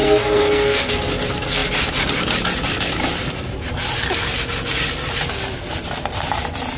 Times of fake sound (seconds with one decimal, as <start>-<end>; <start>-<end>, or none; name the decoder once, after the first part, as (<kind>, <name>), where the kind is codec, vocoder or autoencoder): 0.0-0.9 (codec, SNAC)